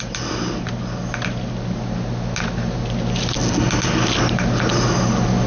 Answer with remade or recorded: recorded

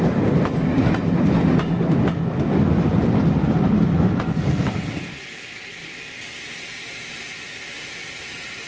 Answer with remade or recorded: recorded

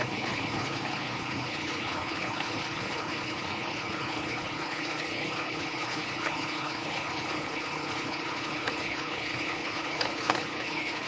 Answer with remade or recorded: remade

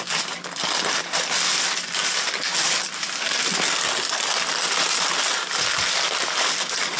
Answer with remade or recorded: recorded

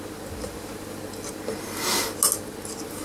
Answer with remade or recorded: recorded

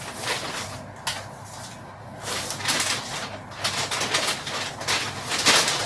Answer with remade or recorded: recorded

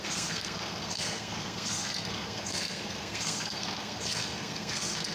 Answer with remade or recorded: remade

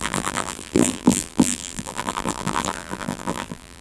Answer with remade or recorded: remade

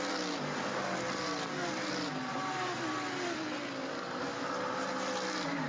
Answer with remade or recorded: recorded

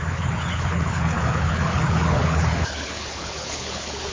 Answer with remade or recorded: remade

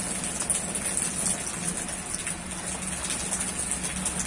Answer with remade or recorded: recorded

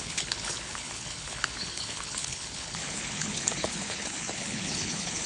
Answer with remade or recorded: remade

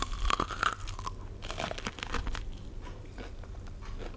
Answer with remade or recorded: recorded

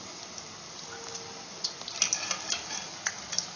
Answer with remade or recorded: recorded